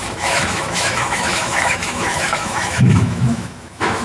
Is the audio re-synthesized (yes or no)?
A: yes